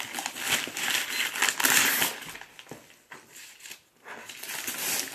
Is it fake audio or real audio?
real